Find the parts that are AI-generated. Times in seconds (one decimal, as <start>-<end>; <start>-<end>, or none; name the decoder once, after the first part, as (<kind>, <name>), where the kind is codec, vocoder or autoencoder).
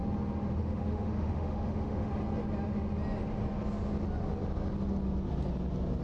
0.6-2.1 (autoencoder, DAC-VAE)